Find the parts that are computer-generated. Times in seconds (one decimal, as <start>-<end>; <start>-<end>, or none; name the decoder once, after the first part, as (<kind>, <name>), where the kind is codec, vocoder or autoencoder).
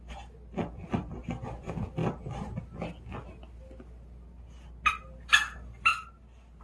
none